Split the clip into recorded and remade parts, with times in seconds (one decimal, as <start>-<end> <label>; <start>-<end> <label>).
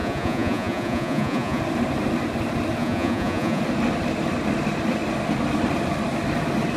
0.0-1.6 remade; 1.6-2.8 recorded; 2.8-3.6 remade; 3.6-6.8 recorded